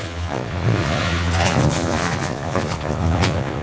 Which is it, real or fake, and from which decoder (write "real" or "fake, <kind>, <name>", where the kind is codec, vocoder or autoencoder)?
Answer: fake, vocoder, Vocos